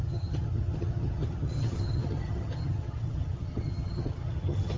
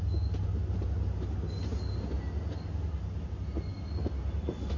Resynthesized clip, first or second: first